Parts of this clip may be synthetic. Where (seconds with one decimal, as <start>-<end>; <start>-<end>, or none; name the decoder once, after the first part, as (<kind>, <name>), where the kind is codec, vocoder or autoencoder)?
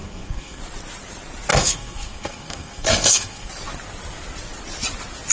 0.0-0.6 (codec, SNAC); 1.5-3.5